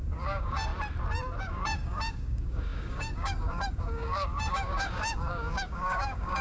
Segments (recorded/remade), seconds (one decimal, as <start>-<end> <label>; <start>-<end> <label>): 0.0-0.7 remade; 0.7-1.4 recorded; 1.4-6.4 remade